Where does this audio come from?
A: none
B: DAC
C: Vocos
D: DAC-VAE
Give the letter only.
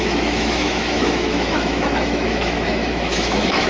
D